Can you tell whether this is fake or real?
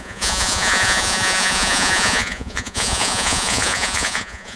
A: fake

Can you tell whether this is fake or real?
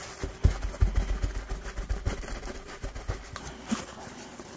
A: real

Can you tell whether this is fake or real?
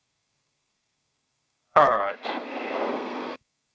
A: fake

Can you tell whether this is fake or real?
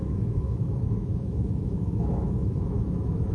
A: fake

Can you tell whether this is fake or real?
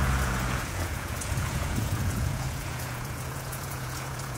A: fake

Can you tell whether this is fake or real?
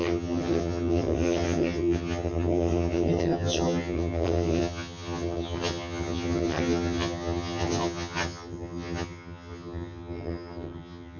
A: fake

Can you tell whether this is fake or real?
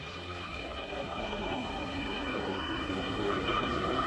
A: fake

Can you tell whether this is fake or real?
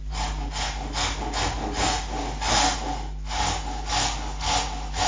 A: real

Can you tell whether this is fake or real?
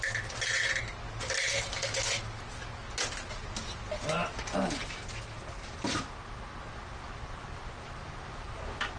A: real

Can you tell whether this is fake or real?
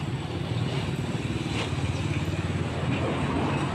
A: real